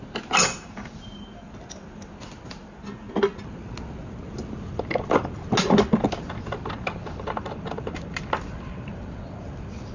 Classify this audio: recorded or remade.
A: recorded